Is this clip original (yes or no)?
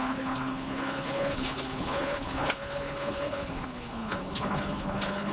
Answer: no